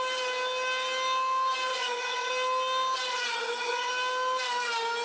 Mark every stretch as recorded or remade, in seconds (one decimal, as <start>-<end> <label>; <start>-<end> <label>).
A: 0.0-1.7 recorded; 1.7-2.3 remade; 2.3-3.1 recorded; 3.1-3.9 remade; 3.9-5.0 recorded